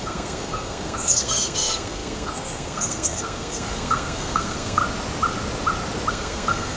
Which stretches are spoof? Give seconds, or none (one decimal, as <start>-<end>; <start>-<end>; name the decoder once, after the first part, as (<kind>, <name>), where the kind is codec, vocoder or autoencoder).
0.0-4.8 (codec, SNAC); 6.1-6.8